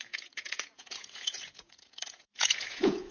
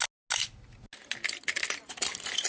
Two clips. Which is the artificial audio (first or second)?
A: first